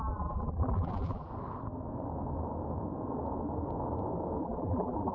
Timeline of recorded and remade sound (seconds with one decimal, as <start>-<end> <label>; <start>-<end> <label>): 0.0-1.3 remade; 1.3-4.4 recorded; 4.4-5.1 remade